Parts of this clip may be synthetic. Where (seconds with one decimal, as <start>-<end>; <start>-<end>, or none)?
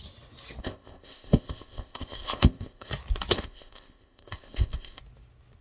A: 0.6-2.9; 3.3-5.0